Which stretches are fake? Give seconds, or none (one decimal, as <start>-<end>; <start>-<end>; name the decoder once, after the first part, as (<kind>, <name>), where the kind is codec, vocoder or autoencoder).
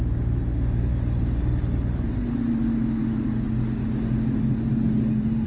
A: none